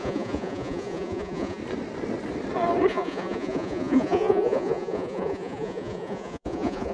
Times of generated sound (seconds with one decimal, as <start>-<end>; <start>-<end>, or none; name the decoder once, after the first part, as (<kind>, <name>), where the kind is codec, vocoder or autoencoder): 0.0-1.6 (vocoder, Vocos); 2.9-6.9